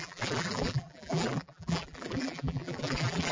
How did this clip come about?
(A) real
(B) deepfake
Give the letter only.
B